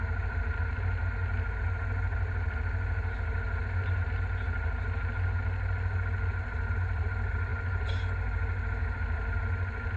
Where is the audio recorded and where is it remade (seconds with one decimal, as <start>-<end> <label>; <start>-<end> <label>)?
0.0-10.0 recorded